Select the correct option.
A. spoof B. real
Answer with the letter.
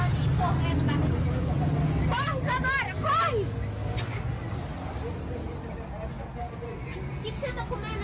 B